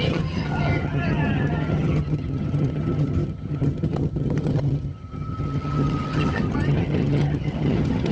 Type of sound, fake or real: fake